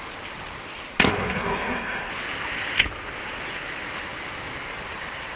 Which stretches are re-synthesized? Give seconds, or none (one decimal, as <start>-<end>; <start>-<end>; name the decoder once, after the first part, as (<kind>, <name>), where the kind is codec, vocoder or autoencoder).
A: 1.1-2.1 (codec, SNAC)